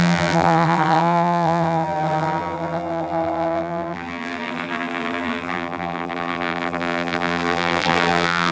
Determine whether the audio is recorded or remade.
remade